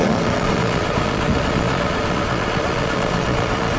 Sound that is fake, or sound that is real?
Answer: fake